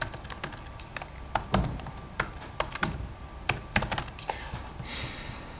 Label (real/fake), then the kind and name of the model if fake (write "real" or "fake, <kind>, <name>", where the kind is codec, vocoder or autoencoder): real